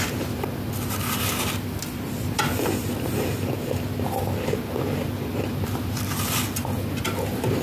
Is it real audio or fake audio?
real